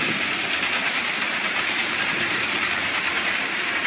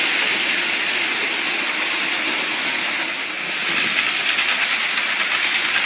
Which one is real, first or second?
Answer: second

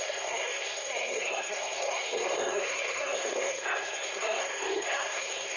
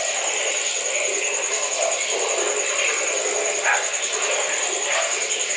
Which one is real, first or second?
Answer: second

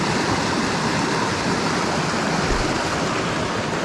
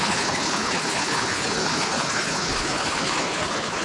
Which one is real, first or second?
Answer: first